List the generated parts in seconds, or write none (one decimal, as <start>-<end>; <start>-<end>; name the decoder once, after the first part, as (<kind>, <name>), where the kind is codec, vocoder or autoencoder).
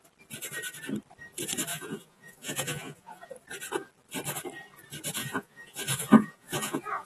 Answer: 1.7-3.3 (vocoder, Vocos); 5.2-7.1